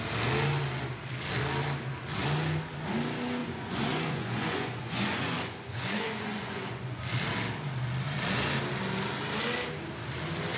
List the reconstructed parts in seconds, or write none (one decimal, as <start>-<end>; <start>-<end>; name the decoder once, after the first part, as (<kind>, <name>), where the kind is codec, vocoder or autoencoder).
3.4-7.0 (vocoder, Vocos)